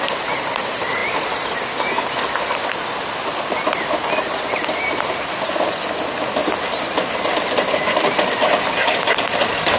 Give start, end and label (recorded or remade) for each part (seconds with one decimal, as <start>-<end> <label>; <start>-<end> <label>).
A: 0.0-9.8 recorded